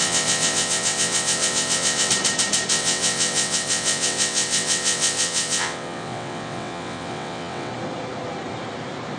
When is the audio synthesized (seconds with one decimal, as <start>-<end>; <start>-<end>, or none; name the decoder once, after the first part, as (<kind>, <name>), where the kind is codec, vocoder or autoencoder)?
0.0-2.1 (vocoder, WaveNeXt); 2.7-7.7